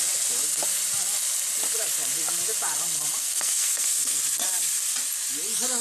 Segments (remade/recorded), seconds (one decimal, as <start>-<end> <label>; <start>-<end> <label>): 0.0-3.2 recorded; 3.2-4.2 remade; 4.2-5.8 recorded